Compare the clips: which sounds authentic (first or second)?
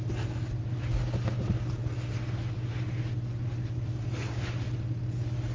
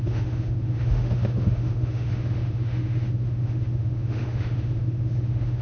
first